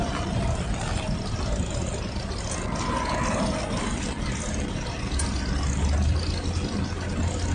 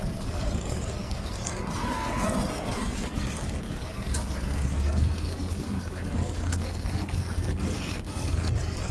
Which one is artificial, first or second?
second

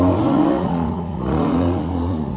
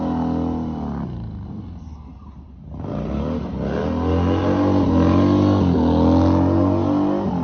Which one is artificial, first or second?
first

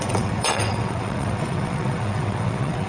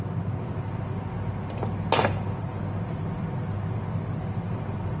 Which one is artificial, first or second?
first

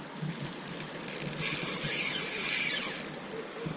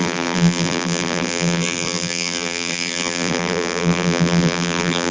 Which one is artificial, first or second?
second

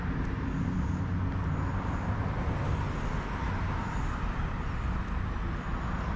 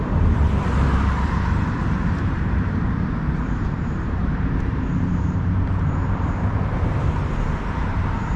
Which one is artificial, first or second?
second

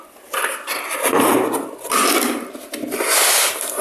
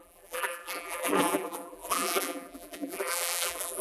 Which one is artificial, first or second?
second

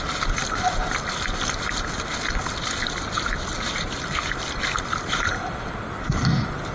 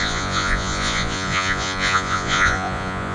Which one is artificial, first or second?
second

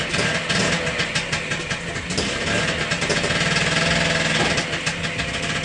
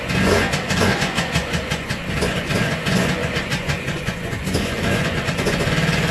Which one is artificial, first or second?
second